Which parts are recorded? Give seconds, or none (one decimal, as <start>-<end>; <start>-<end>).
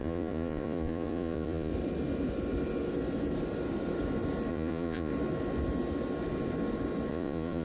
1.7-4.5; 5.1-7.1